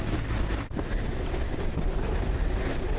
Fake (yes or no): no